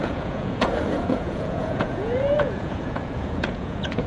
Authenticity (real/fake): fake